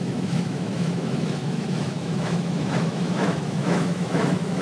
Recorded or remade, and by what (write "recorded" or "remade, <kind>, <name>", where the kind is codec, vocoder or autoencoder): remade, autoencoder, DAC-VAE